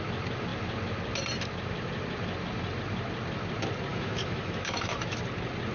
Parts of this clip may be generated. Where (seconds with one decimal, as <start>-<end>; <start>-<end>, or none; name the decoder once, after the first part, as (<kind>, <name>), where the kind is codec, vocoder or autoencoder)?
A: 3.9-5.2 (autoencoder, DAC-VAE)